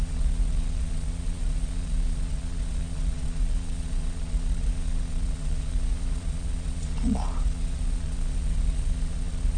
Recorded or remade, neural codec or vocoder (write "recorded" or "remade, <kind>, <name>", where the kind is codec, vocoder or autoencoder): remade, vocoder, Vocos